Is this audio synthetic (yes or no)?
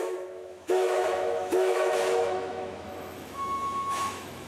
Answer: yes